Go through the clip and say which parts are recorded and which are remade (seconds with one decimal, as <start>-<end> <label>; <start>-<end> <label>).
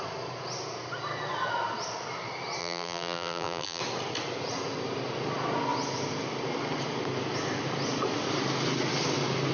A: 0.0-2.6 recorded; 2.6-3.8 remade; 3.8-9.5 recorded